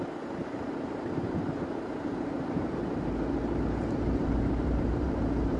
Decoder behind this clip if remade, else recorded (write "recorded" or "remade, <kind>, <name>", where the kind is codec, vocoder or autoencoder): remade, vocoder, BigVGAN v2